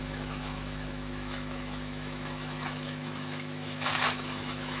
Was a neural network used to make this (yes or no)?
yes